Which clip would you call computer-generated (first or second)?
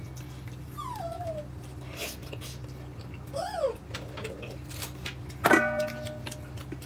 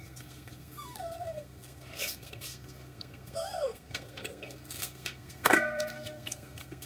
second